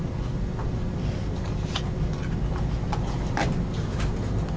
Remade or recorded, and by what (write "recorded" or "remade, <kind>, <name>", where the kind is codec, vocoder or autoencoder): recorded